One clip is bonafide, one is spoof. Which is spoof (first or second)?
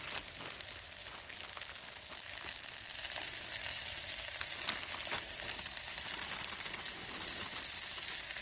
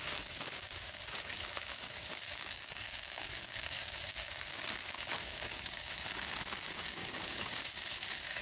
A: second